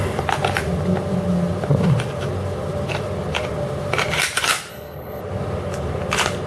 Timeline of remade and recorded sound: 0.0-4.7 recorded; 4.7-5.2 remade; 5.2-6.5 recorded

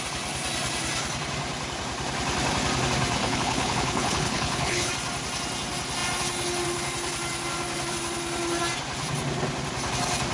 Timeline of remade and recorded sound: 0.0-3.2 recorded; 3.2-4.9 remade; 4.9-10.3 recorded

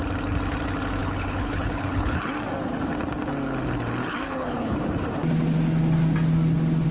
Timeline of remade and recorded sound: 0.0-1.0 recorded; 1.0-2.3 remade; 2.3-4.0 recorded; 4.0-4.8 remade; 4.8-6.9 recorded

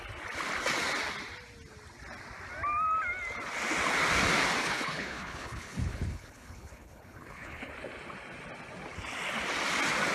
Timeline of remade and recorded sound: 0.0-4.6 recorded; 4.6-7.7 remade; 7.7-10.1 recorded

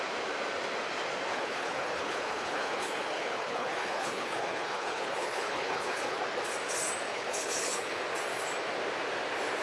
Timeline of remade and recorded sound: 0.0-1.3 recorded; 1.3-6.2 remade; 6.2-7.1 recorded; 7.1-8.0 remade; 8.0-9.6 recorded

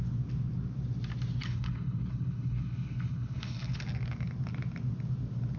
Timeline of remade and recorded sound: 0.0-1.4 recorded; 1.4-3.8 remade; 3.8-5.6 recorded